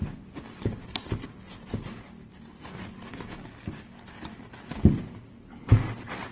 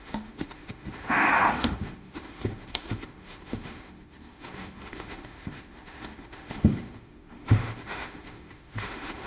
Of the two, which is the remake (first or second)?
second